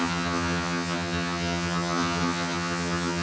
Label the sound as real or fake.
fake